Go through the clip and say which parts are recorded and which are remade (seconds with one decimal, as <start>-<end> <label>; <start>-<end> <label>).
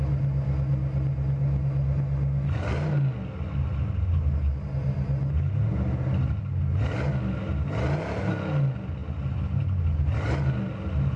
0.0-11.2 recorded